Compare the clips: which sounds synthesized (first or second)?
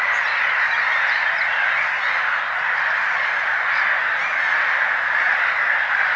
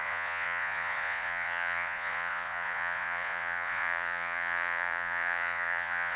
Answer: second